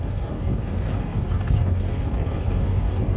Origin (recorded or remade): remade